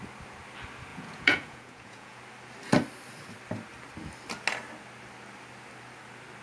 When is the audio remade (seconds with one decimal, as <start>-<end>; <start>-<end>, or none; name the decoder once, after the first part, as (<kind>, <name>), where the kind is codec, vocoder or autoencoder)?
0.9-2.2 (vocoder, Vocos)